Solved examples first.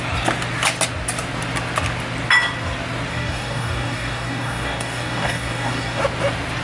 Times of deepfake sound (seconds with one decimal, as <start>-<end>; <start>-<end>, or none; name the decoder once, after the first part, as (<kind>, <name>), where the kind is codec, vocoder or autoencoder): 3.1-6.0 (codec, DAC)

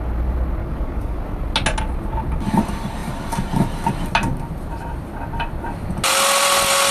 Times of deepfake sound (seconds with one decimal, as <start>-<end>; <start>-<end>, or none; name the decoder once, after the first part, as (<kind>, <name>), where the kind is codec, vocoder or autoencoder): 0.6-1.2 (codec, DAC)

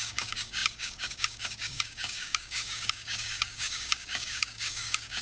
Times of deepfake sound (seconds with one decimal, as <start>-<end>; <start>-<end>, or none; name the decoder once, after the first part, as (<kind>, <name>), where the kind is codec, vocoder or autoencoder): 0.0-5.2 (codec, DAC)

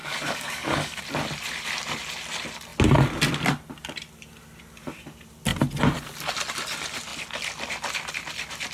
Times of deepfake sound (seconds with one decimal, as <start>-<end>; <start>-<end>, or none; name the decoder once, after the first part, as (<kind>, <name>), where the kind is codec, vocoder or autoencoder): 0.0-1.0 (codec, DAC)